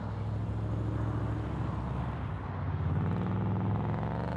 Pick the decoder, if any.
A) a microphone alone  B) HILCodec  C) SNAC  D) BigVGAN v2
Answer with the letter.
A